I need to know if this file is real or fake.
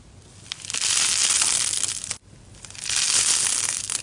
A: fake